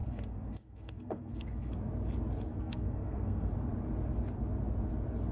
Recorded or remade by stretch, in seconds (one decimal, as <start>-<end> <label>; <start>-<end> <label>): 0.0-1.7 remade; 1.7-2.5 recorded; 2.5-3.5 remade; 3.5-5.3 recorded